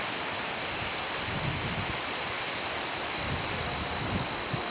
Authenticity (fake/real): real